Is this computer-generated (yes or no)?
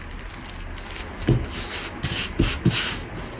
no